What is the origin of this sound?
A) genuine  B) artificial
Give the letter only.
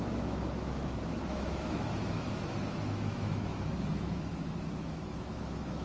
B